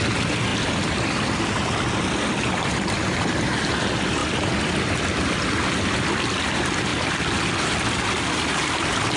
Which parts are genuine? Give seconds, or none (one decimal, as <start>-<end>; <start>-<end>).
0.0-9.2